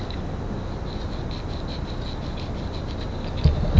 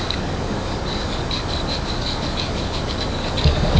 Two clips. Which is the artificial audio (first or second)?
second